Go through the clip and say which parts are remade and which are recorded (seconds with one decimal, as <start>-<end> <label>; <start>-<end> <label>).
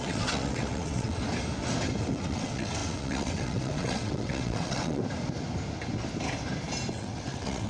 0.0-1.2 remade; 1.2-2.0 recorded; 2.0-5.0 remade; 5.0-6.9 recorded; 6.9-7.7 remade